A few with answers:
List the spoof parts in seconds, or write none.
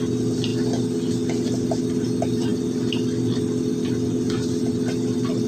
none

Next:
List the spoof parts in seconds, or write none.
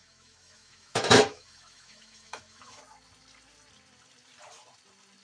0.0-2.8 (autoencoder, DAC-VAE)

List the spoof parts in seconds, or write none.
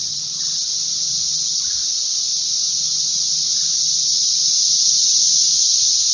none